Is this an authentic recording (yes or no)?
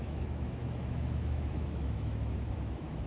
no